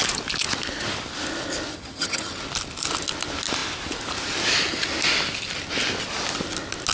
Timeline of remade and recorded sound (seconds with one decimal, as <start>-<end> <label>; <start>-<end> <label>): 0.0-1.7 recorded; 1.7-2.4 remade; 2.4-6.9 recorded